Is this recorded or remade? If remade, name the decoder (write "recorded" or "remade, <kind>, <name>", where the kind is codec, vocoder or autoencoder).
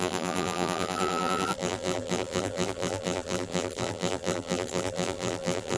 remade, vocoder, BigVGAN v2